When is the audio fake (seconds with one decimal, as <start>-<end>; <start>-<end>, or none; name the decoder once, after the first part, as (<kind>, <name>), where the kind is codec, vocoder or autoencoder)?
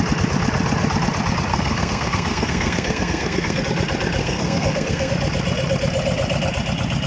1.5-3.6 (codec, SNAC); 4.2-5.1